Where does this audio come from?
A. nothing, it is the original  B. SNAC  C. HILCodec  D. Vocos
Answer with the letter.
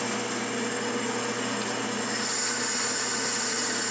A